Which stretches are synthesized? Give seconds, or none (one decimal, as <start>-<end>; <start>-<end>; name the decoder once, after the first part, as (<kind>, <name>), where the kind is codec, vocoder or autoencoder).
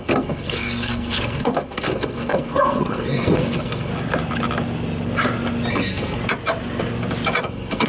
0.0-3.9 (codec, SNAC); 5.7-6.2; 7.4-7.9